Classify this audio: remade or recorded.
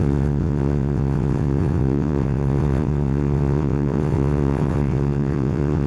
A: remade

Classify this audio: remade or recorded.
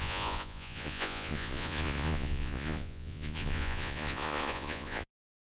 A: remade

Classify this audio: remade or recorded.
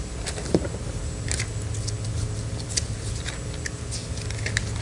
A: recorded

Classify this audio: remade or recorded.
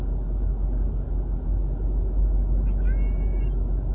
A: recorded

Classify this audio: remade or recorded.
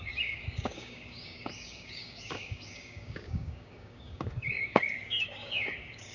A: remade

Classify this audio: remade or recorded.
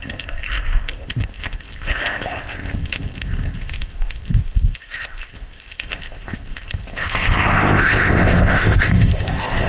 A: remade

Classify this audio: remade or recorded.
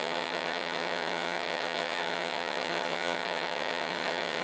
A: remade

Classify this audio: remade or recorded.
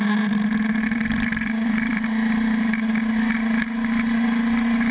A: remade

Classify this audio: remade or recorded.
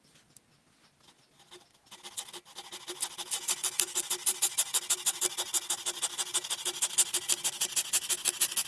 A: recorded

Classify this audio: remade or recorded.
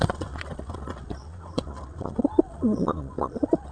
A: remade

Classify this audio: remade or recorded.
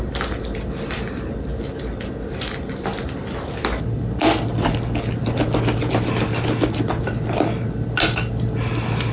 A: recorded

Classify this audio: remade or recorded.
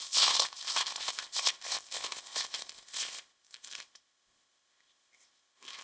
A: remade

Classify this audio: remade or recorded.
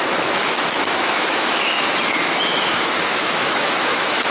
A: remade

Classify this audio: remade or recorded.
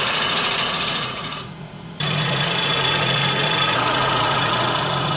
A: remade